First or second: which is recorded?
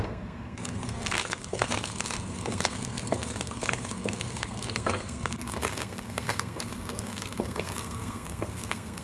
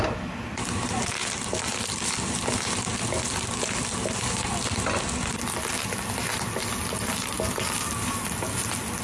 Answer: second